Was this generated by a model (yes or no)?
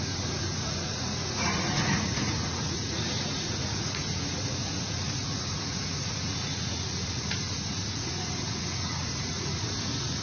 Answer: yes